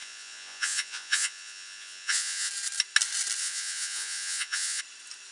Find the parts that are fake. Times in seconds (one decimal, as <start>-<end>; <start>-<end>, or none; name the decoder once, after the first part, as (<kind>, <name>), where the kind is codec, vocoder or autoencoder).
0.0-2.5 (vocoder, Vocos); 3.4-4.8